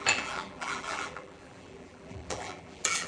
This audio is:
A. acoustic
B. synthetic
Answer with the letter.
B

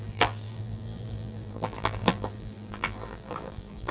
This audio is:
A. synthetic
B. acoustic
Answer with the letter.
A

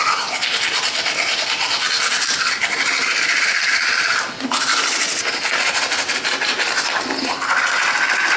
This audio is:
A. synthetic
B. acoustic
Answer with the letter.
B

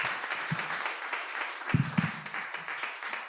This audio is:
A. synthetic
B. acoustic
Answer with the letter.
A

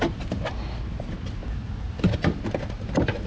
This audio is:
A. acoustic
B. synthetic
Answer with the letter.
A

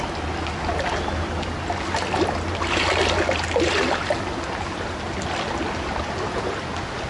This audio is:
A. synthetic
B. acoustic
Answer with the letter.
B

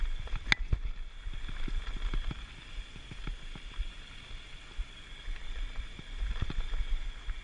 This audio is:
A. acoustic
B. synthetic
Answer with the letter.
A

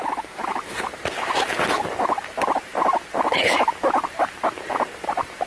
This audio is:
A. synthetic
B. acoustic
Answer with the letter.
A